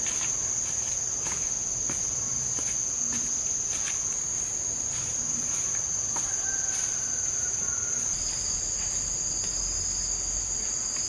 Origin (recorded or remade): recorded